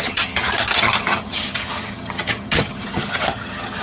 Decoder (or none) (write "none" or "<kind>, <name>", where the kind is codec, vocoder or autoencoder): vocoder, HiFi-GAN